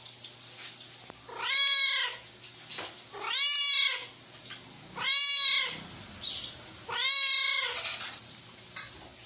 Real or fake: real